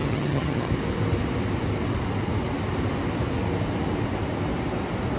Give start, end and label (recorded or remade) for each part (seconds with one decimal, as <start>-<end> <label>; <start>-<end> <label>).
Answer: 0.0-0.7 remade; 0.7-5.2 recorded